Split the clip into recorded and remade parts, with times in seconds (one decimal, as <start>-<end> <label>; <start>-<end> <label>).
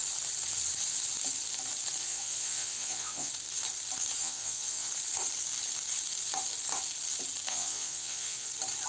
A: 0.0-2.0 recorded; 2.0-3.3 remade; 3.3-4.2 recorded; 4.2-4.9 remade; 4.9-7.5 recorded; 7.5-8.5 remade; 8.5-8.9 recorded